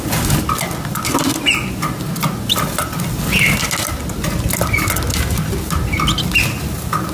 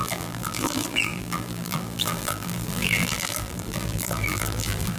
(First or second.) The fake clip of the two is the second